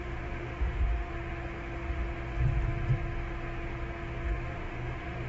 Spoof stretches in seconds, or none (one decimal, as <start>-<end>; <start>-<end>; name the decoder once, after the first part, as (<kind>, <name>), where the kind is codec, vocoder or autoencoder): 0.0-1.1 (autoencoder, DAC-VAE); 4.3-5.3